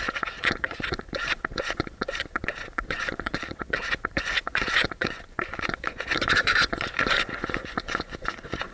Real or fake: fake